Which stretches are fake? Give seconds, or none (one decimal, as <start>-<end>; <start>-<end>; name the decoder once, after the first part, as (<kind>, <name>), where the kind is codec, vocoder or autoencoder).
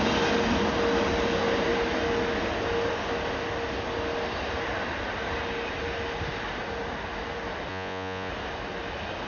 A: 7.7-8.3 (vocoder, Vocos)